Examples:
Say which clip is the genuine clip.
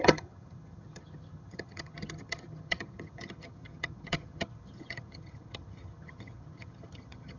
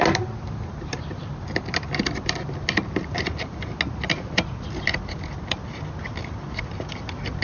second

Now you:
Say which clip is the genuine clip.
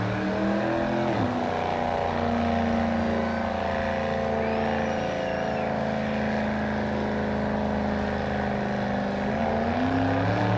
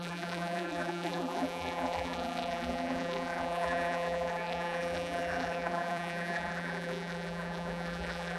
first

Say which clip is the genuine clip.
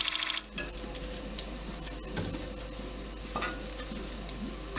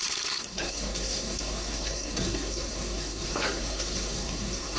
first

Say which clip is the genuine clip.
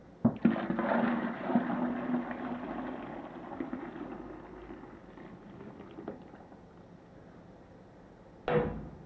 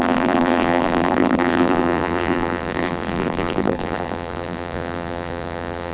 first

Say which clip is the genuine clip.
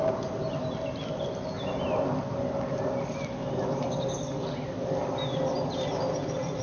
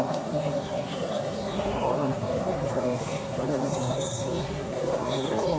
first